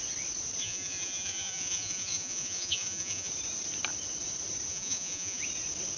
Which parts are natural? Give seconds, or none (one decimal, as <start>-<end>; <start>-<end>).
0.0-0.6; 3.3-4.7; 5.4-6.0

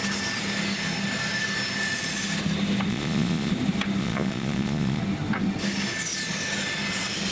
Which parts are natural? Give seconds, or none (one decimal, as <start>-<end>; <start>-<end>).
0.0-2.9; 3.5-4.0; 5.0-7.3

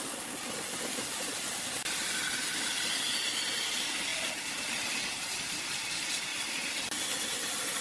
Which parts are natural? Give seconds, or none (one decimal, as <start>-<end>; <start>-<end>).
0.0-7.8

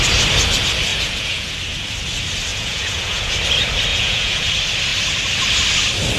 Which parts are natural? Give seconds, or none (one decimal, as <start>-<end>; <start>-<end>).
0.0-0.9; 1.5-2.5; 3.3-3.9; 4.5-6.2

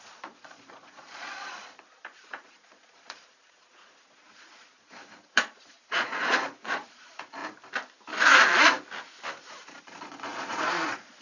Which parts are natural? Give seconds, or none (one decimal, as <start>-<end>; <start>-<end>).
7.4-9.8

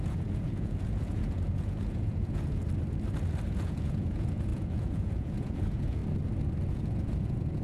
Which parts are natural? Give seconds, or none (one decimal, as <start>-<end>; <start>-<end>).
2.6-3.5; 6.0-6.7